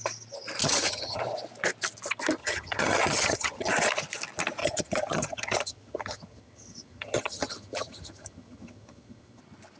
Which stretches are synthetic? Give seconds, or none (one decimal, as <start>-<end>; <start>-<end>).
0.6-1.2; 2.4-3.7; 4.6-9.4